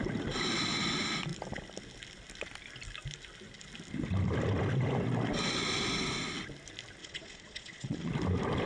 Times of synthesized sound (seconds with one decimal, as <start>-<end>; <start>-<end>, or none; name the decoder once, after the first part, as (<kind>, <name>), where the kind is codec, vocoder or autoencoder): 7.0-8.1 (vocoder, Vocos)